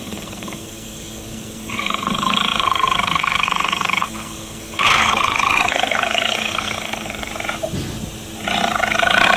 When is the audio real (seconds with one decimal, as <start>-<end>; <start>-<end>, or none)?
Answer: 7.3-9.4